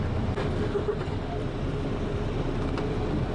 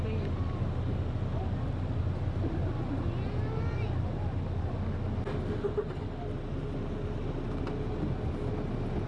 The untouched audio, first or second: second